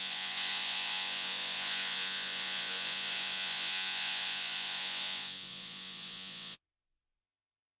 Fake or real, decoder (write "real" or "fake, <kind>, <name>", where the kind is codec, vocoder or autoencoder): fake, vocoder, Vocos